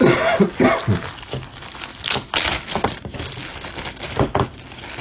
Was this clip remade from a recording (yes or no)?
no